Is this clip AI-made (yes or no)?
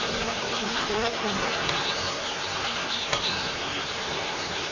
yes